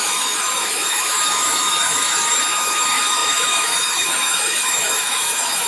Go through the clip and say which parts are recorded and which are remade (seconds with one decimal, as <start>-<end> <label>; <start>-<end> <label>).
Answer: 0.0-5.7 remade